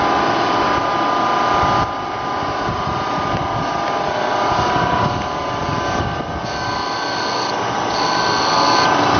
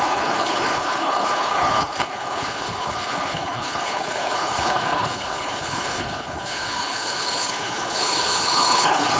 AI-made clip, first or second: second